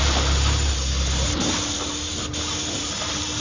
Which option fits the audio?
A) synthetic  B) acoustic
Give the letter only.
B